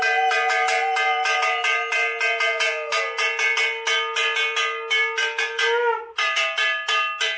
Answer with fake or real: real